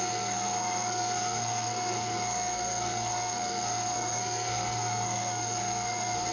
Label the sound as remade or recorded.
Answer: remade